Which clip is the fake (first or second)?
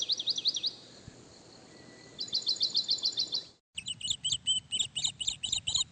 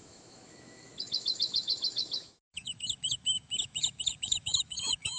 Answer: second